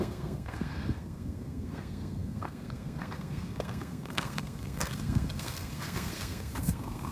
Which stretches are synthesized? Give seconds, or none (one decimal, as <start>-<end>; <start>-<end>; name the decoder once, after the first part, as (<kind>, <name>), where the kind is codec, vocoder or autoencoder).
0.0-7.1 (codec, SNAC)